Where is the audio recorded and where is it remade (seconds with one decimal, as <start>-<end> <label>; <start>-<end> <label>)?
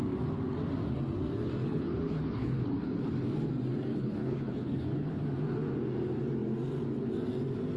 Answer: 0.0-1.6 recorded; 1.6-3.1 remade; 3.1-3.9 recorded; 3.9-5.2 remade; 5.2-7.8 recorded